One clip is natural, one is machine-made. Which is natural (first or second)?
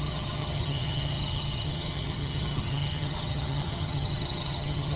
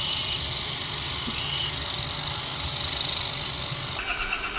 second